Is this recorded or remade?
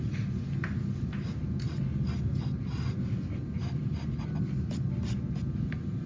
recorded